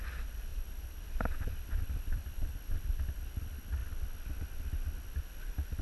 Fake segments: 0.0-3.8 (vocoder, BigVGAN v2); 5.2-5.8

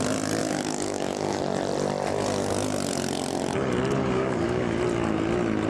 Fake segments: 0.4-1.4 (codec, DAC); 4.0-4.8

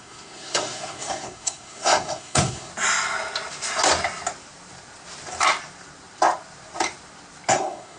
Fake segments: 0.0-2.7 (codec, SNAC); 7.5-8.0

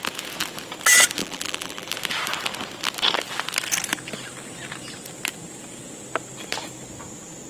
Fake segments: 1.2-1.9 (vocoder, BigVGAN v2)